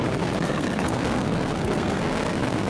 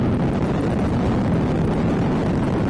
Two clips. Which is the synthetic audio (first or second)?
first